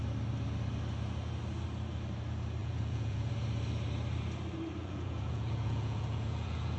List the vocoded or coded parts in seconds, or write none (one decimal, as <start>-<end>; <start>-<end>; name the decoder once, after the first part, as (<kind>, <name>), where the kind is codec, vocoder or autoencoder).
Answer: 2.6-3.3 (vocoder, Vocos); 4.8-6.8